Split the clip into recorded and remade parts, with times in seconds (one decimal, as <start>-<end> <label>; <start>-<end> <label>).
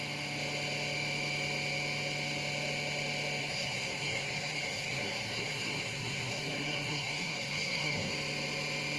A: 0.0-3.4 recorded; 3.4-8.1 remade; 8.1-9.0 recorded